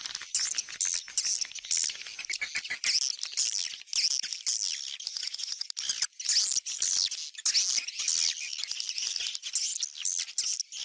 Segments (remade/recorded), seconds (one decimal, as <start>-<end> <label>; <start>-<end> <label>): 0.0-5.1 recorded; 5.1-5.7 remade; 5.7-10.8 recorded